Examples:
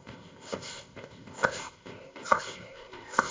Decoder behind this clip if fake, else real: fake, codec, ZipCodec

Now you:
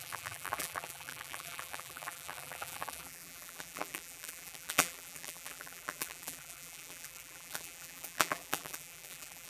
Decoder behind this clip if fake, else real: fake, vocoder, BigVGAN v2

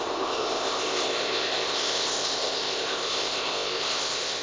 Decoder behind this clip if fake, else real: fake, codec, ZipCodec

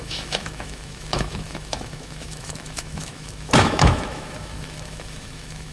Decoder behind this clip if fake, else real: fake, autoencoder, DAC-VAE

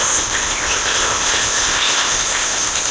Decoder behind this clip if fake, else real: fake, codec, ZipCodec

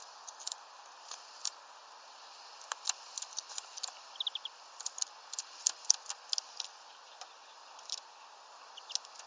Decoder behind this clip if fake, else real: real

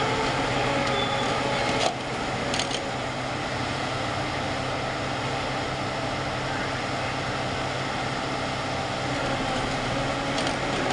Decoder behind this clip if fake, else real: real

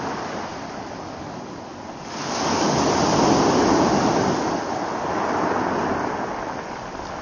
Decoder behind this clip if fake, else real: real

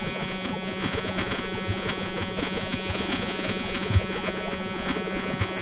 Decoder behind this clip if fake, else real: fake, vocoder, Vocos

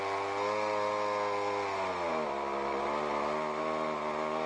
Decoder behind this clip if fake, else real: real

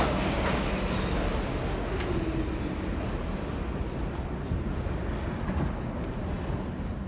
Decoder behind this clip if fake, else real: real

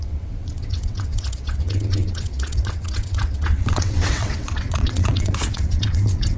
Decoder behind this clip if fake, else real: fake, vocoder, WaveNeXt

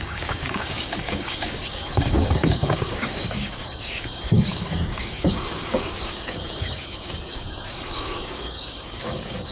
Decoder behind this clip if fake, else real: fake, codec, DAC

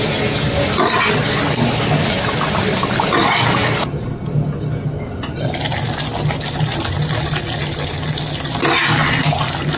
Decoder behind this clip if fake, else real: real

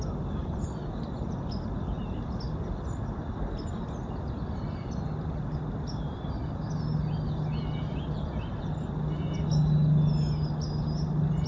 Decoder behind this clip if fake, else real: real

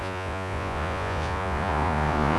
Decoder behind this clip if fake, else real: fake, vocoder, Vocos